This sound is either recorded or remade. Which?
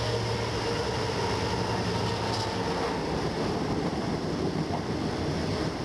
recorded